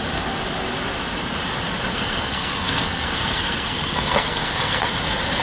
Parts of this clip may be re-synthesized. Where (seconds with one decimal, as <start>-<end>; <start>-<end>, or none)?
1.9-4.9